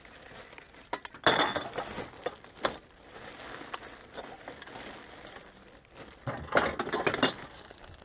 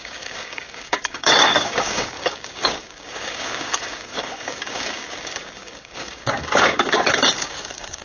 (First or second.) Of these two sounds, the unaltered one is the first